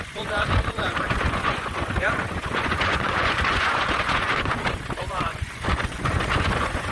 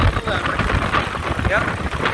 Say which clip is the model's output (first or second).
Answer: first